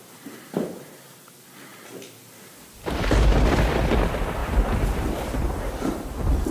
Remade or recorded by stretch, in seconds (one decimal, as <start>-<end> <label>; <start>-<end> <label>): 0.0-6.5 remade